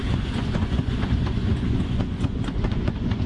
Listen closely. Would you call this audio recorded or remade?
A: remade